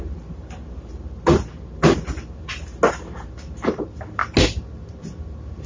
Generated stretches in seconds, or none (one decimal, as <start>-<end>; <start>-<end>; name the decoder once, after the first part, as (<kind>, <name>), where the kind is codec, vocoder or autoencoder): none